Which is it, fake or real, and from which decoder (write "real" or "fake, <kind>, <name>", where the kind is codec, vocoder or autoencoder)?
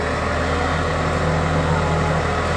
real